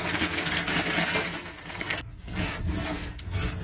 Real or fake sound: fake